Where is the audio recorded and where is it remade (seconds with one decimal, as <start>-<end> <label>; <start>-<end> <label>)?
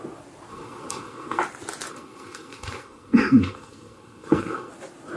0.0-0.5 recorded; 0.5-1.4 remade; 1.4-1.9 recorded; 1.9-4.7 remade; 4.7-5.2 recorded